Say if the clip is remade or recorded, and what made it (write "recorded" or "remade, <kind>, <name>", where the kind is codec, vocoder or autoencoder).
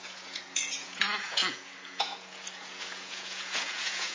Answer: remade, vocoder, Vocos